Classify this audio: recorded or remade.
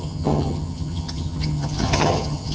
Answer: remade